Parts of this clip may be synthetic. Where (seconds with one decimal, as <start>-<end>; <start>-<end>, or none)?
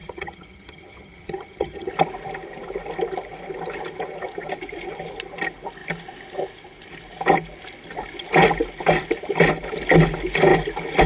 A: 0.0-1.9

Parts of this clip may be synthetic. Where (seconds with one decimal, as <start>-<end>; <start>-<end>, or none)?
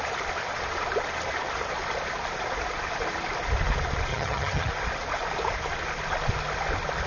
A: 4.1-4.7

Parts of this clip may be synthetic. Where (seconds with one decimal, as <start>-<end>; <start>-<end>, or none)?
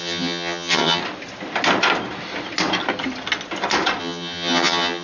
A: 0.0-1.0; 4.0-5.0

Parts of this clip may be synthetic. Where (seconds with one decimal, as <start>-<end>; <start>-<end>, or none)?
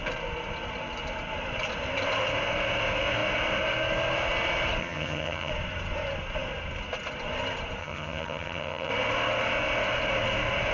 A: 4.8-5.5; 7.8-8.9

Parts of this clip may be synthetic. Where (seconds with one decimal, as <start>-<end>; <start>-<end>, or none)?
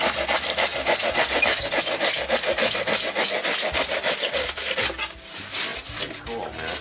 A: none